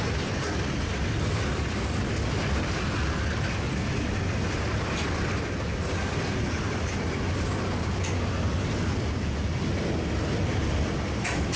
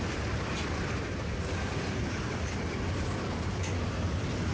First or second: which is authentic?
first